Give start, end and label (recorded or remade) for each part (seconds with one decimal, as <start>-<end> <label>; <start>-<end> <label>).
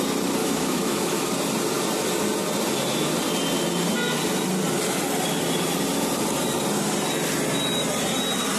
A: 0.0-0.4 recorded; 0.4-1.3 remade; 1.3-8.6 recorded